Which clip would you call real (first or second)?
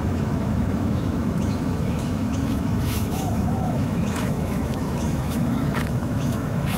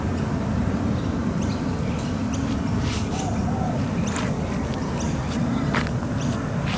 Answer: second